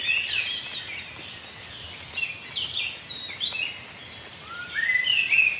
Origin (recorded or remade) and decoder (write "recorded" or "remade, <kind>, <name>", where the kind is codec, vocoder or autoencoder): recorded